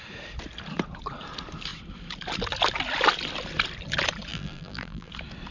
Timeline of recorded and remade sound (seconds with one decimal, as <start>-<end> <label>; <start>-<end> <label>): 0.0-4.3 recorded; 4.3-5.1 remade; 5.1-5.5 recorded